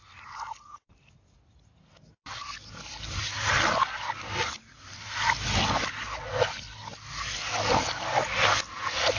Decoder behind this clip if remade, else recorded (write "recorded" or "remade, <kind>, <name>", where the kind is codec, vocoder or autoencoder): recorded